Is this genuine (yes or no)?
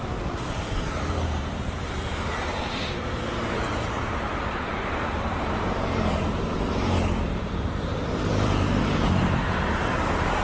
no